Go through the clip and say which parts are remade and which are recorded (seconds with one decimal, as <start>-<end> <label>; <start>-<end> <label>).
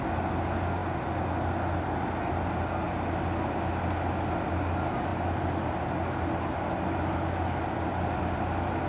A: 0.0-8.9 recorded